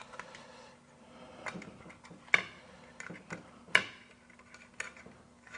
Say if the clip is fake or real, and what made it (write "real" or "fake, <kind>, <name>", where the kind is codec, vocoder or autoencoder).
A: real